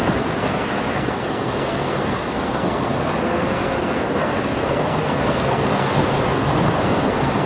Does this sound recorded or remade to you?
remade